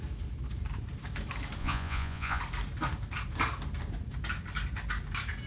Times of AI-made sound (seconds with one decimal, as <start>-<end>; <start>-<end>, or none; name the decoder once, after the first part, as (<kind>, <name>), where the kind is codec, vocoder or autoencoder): 1.6-2.4 (vocoder, Vocos)